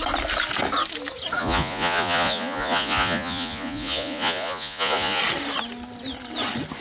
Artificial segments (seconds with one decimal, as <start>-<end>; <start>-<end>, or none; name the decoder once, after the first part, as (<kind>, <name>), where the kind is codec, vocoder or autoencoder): 1.4-5.2 (vocoder, Vocos)